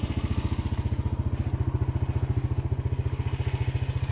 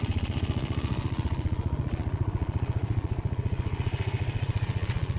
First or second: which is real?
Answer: first